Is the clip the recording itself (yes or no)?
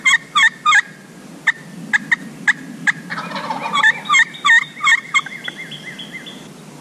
yes